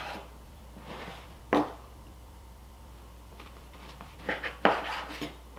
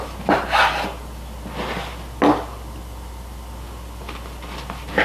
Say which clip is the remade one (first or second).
first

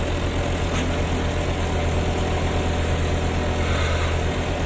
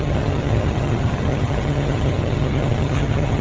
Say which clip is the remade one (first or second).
second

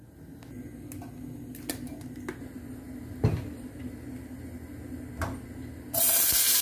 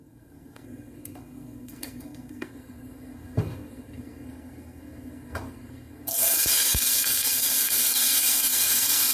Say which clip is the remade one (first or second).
second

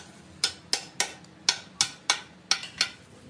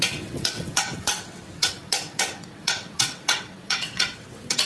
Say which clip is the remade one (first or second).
second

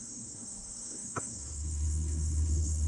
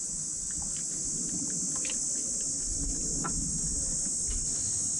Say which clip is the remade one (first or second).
first